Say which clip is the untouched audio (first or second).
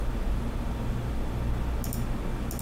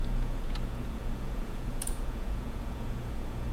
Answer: first